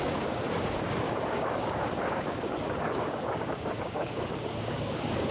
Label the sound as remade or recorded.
remade